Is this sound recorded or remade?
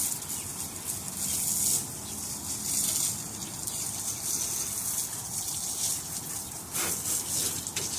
recorded